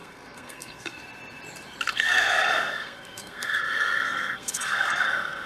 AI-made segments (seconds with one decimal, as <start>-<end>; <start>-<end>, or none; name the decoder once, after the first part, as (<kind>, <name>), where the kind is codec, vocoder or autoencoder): 0.0-1.0 (codec, SNAC); 1.9-5.5